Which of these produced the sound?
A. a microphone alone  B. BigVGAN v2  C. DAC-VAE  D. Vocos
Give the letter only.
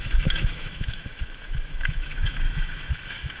C